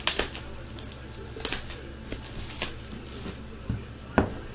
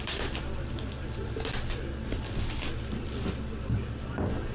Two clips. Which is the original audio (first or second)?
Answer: first